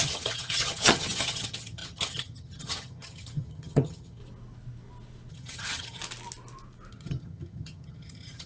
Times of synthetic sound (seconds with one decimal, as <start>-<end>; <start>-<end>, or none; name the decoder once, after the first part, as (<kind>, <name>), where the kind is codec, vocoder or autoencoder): 0.0-4.2 (vocoder, HiFi-GAN); 5.3-6.0; 6.9-8.5